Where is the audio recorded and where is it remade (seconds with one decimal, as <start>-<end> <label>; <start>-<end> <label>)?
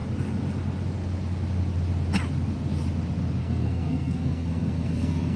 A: 0.0-3.4 recorded; 3.4-5.4 remade